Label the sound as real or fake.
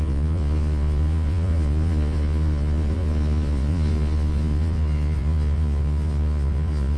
fake